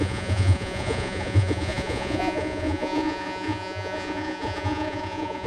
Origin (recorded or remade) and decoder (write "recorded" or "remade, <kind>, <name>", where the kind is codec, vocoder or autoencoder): remade, vocoder, Vocos